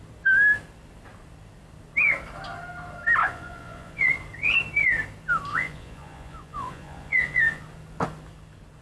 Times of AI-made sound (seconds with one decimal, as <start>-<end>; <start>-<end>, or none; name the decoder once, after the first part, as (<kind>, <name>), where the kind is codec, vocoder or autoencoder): 3.2-4.1 (vocoder, Vocos); 5.5-7.6

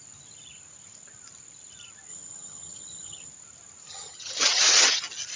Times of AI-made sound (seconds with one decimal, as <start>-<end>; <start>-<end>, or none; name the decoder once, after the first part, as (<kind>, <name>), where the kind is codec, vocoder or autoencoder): 2.1-3.3 (vocoder, HiFi-GAN); 3.9-5.0

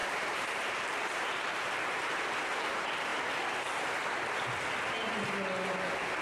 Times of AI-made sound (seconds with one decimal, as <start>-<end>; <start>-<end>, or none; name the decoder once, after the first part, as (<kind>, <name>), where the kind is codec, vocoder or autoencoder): 0.0-2.0 (vocoder, BigVGAN v2); 2.5-3.1

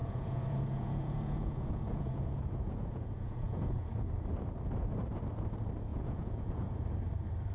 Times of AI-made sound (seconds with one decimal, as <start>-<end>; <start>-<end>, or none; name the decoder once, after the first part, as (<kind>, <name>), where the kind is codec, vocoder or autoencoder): 0.0-3.9 (vocoder, Vocos); 5.9-6.8

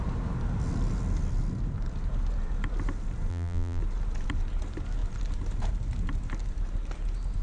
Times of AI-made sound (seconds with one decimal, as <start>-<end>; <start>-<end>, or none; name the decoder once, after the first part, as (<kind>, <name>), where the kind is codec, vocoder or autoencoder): 3.3-3.8 (vocoder, BigVGAN v2)

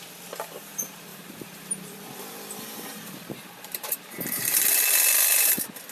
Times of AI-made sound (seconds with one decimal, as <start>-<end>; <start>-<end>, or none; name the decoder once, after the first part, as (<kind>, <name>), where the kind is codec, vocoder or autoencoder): 1.1-4.6 (vocoder, BigVGAN v2)

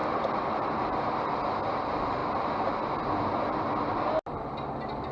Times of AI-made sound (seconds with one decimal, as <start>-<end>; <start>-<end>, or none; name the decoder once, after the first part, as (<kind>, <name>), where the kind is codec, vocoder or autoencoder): none

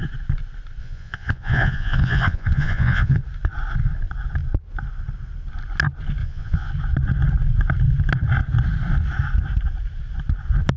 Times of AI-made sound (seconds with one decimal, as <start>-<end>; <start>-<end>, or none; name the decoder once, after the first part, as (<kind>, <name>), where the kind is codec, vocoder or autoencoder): 0.8-3.2 (vocoder, Vocos); 6.2-6.7